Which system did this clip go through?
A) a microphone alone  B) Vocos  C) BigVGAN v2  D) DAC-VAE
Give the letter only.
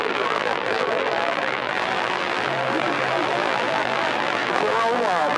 C